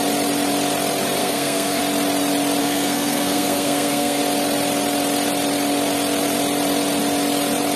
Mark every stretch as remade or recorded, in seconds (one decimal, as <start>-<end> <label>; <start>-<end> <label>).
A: 0.0-1.2 recorded; 1.2-1.8 remade; 1.8-2.6 recorded; 2.6-4.2 remade; 4.2-7.8 recorded